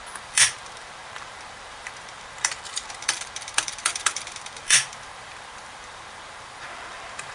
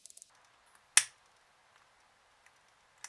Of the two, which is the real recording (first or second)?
second